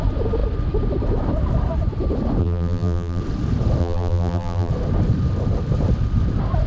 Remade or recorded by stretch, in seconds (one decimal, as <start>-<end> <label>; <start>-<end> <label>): 0.0-2.4 recorded; 2.4-3.2 remade; 3.2-3.8 recorded; 3.8-4.7 remade; 4.7-6.7 recorded